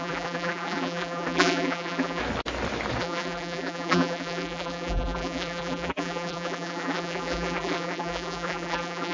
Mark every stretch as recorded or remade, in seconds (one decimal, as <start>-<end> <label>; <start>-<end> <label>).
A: 0.0-2.2 remade; 2.2-3.0 recorded; 3.0-9.1 remade